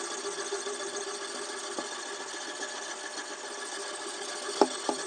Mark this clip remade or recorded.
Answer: recorded